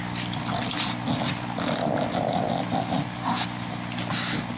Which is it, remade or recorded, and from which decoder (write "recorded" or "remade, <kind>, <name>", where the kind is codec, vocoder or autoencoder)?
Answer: recorded